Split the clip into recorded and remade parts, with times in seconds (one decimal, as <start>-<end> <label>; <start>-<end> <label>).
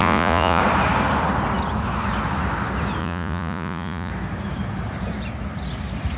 0.0-0.6 remade; 0.6-3.0 recorded; 3.0-4.1 remade; 4.1-6.2 recorded